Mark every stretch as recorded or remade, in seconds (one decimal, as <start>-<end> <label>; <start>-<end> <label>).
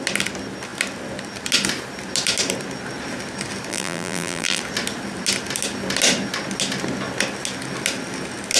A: 0.0-3.7 recorded; 3.7-4.6 remade; 4.6-8.6 recorded